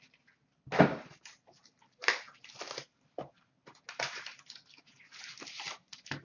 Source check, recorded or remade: recorded